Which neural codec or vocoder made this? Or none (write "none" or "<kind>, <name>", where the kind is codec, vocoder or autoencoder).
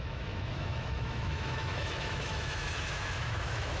autoencoder, DAC-VAE